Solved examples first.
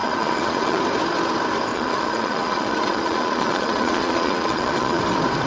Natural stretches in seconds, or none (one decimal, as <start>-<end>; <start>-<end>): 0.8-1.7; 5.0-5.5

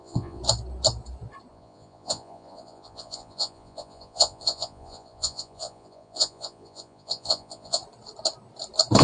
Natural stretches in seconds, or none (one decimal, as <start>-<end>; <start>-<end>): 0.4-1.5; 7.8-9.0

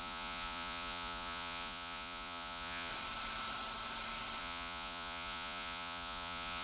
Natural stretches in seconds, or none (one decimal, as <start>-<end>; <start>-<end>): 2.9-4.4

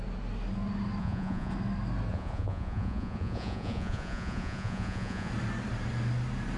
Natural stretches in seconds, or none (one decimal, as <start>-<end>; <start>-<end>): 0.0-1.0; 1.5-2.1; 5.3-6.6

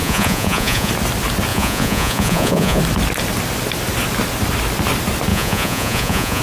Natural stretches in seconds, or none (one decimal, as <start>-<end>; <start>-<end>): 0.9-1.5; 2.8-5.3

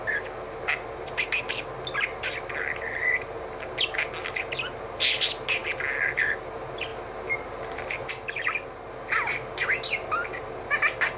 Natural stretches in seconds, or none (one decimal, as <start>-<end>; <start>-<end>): 0.0-11.2